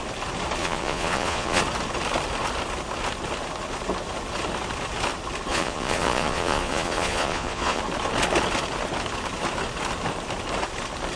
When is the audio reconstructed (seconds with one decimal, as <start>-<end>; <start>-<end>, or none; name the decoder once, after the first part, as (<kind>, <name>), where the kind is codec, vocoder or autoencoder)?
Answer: 0.6-1.6 (vocoder, Vocos); 5.5-7.8

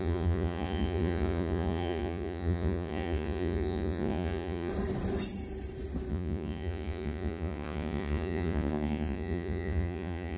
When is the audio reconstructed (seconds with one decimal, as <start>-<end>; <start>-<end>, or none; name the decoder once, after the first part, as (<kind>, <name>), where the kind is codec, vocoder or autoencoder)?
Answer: 0.0-4.7 (vocoder, Vocos); 6.1-10.4